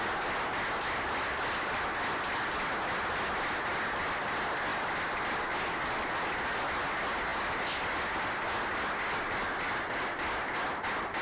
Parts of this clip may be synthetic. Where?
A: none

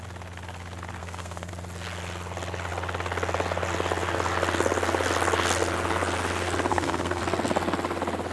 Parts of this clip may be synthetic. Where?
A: 1.0-1.5 (codec, SNAC); 6.7-7.2

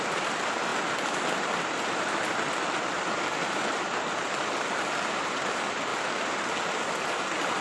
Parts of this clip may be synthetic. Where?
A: 0.0-5.9 (vocoder, BigVGAN v2); 7.0-7.6

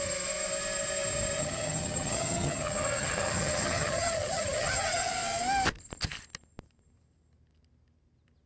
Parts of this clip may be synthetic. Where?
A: 1.4-5.1 (vocoder, HiFi-GAN)

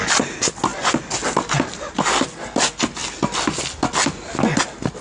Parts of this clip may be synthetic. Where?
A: none

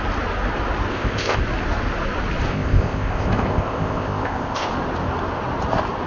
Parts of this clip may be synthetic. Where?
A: 0.9-1.4 (codec, ZipCodec); 2.5-4.7

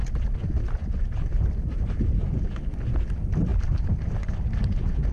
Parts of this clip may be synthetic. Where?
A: none

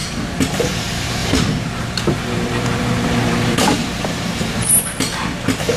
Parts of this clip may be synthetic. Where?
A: 1.2-4.7 (vocoder, BigVGAN v2)